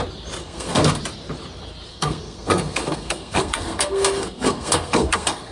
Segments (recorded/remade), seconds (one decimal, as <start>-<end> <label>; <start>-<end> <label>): 0.0-0.4 recorded; 0.4-1.0 remade; 1.0-1.9 recorded; 1.9-5.5 remade